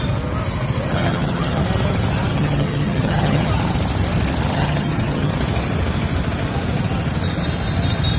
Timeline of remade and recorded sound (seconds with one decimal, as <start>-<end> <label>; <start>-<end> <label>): 0.0-0.9 recorded; 0.9-1.6 remade; 1.6-2.3 recorded; 2.3-3.5 remade; 3.5-4.5 recorded; 4.5-5.3 remade; 5.3-8.2 recorded